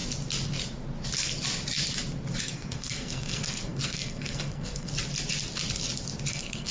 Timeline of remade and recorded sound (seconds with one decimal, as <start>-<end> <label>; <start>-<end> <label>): 0.0-2.4 recorded; 2.4-4.9 remade; 4.9-6.3 recorded; 6.3-6.7 remade